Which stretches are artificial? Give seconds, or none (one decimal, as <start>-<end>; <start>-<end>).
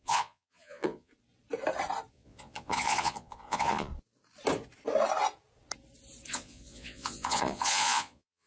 0.0-1.1; 2.1-3.9; 6.3-8.5